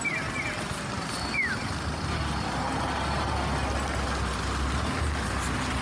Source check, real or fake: real